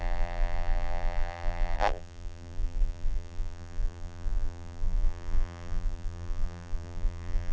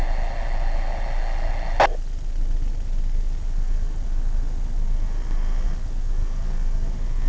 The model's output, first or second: first